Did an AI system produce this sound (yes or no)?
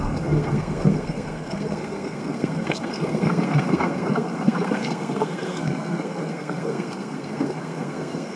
yes